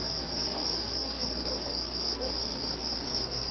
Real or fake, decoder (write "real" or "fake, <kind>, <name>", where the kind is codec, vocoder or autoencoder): fake, codec, SNAC